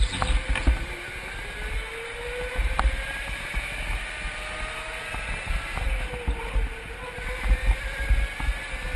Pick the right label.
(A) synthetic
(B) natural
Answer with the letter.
B